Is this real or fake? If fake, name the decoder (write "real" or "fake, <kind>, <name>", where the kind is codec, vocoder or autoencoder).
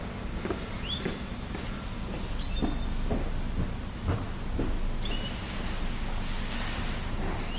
real